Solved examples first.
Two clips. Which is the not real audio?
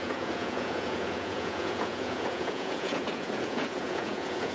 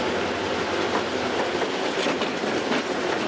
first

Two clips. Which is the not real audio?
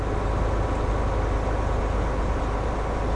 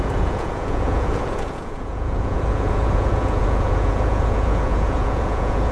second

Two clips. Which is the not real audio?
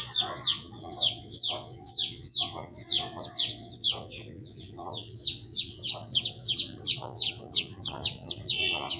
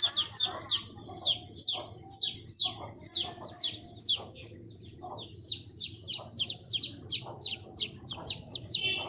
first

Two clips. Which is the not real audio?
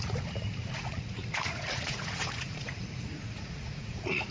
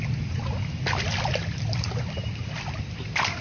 first